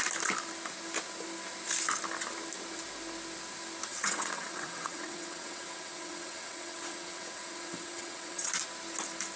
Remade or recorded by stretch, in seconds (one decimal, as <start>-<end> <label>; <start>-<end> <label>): 0.0-3.9 recorded; 3.9-8.5 remade; 8.5-9.4 recorded